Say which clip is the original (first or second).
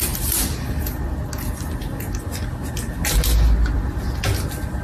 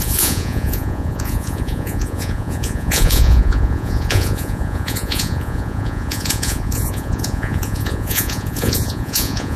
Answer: first